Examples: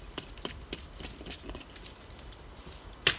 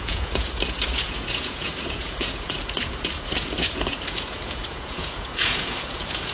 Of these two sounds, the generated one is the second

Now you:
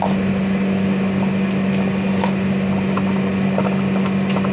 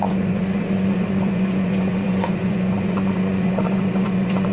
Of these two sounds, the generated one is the second